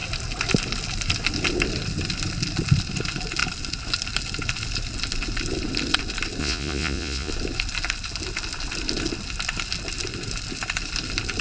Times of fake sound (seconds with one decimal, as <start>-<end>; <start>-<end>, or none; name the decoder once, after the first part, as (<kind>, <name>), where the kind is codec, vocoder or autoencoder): 6.4-7.3 (vocoder, Vocos)